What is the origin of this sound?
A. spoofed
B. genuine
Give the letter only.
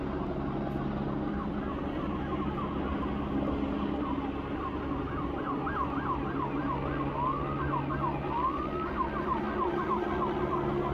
B